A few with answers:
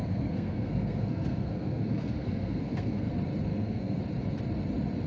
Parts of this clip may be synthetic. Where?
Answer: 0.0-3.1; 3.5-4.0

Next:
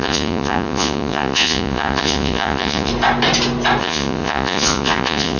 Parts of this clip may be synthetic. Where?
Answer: 0.0-2.9; 3.8-5.4

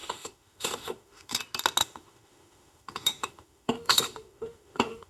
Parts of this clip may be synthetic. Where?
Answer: 0.0-1.4; 1.8-5.1

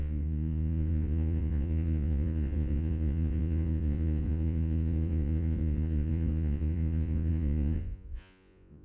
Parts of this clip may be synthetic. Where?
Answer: 0.0-8.8

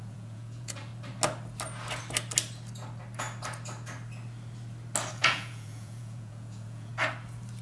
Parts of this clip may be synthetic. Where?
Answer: 0.0-0.9; 5.1-6.9

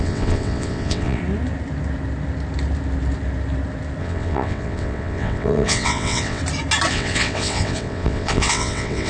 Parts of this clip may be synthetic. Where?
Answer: 0.0-1.2; 4.0-6.4; 6.9-9.1

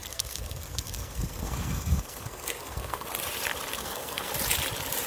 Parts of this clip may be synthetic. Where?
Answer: 0.0-3.1; 3.7-4.3

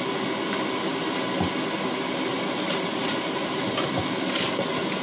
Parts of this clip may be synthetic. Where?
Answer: none